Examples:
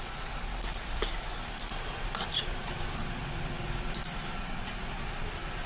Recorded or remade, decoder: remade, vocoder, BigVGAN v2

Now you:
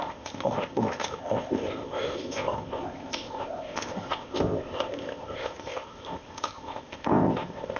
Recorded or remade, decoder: remade, codec, ZipCodec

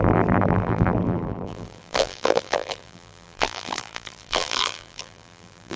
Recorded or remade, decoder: remade, vocoder, BigVGAN v2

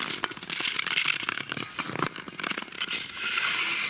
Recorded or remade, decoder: recorded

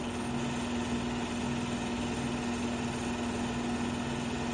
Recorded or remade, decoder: recorded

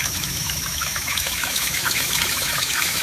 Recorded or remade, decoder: remade, autoencoder, DAC-VAE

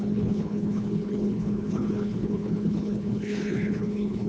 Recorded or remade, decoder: remade, codec, HILCodec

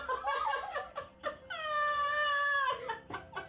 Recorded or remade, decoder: recorded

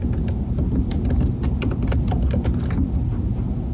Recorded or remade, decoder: recorded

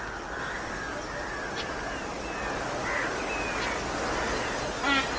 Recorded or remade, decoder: recorded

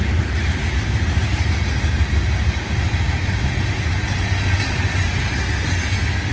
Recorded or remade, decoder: recorded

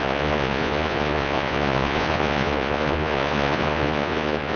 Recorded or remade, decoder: remade, vocoder, Vocos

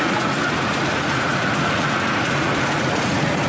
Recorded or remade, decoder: remade, vocoder, Vocos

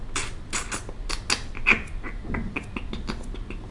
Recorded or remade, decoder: recorded